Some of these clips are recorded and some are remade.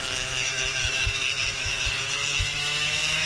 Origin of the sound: remade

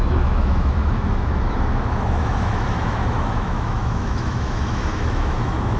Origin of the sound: remade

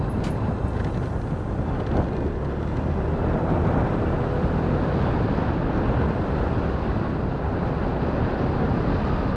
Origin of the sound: recorded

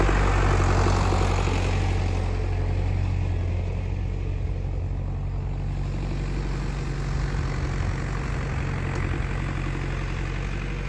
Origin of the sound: recorded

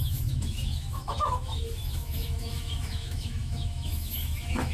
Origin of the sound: remade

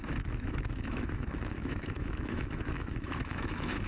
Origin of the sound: remade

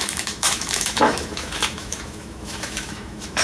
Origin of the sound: remade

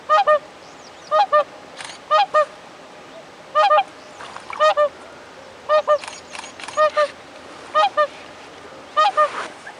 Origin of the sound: recorded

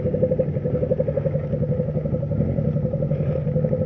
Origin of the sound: recorded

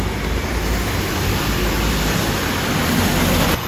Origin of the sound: recorded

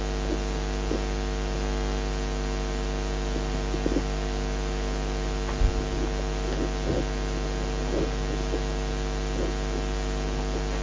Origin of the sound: recorded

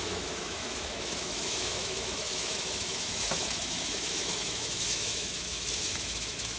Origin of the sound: remade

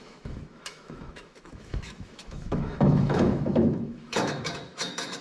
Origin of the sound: remade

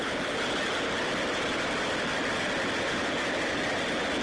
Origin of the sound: recorded